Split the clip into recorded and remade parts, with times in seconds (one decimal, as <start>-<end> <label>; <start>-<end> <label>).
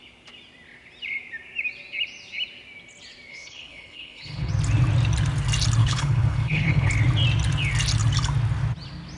0.0-3.3 recorded; 3.3-4.5 remade; 4.5-5.8 recorded; 5.8-6.9 remade; 6.9-9.2 recorded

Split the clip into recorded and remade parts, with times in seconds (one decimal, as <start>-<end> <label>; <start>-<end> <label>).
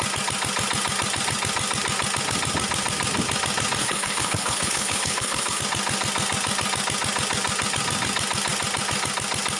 0.0-3.8 recorded; 3.8-5.6 remade; 5.6-9.6 recorded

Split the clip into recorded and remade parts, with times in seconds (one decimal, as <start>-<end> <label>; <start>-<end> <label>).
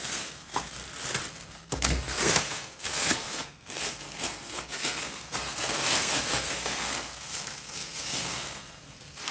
0.0-0.8 remade; 0.8-1.3 recorded; 1.3-9.3 remade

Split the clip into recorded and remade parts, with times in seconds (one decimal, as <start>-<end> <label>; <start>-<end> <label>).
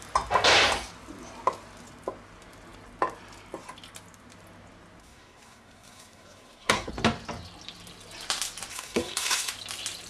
0.0-5.0 recorded; 5.0-6.9 remade; 6.9-8.7 recorded; 8.7-9.5 remade; 9.5-10.1 recorded